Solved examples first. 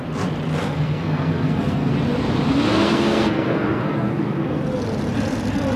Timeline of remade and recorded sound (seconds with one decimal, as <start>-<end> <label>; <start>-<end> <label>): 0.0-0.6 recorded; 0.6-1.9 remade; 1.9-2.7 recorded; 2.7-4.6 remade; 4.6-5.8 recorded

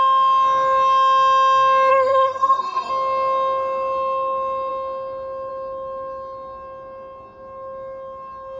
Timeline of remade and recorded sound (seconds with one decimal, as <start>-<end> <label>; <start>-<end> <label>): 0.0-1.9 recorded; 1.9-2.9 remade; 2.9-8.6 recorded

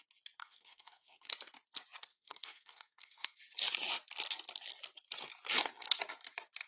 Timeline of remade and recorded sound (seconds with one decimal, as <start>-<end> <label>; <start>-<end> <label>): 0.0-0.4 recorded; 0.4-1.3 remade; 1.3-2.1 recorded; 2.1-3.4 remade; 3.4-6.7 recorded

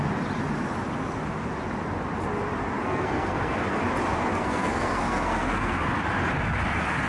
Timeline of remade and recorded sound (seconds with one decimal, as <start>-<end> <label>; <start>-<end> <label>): 0.0-2.8 recorded; 2.8-3.8 remade; 3.8-4.3 recorded; 4.3-5.9 remade; 5.9-7.1 recorded

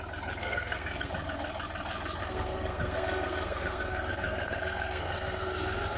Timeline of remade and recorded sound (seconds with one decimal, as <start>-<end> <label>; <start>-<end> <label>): 0.0-0.4 recorded; 0.4-1.1 remade; 1.1-2.2 recorded; 2.2-6.0 remade